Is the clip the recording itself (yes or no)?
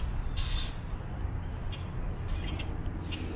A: yes